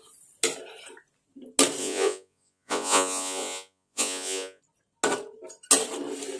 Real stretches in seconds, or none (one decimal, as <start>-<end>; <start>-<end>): 0.0-1.8; 4.6-6.4